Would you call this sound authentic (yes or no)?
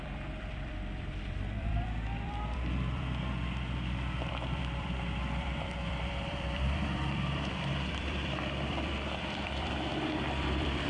no